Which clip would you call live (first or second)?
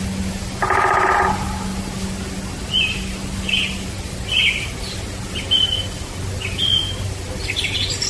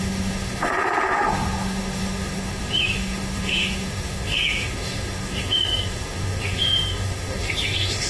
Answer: first